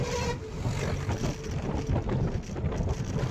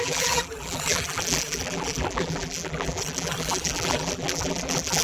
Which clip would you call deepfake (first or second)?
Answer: second